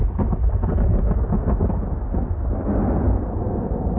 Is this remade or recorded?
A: recorded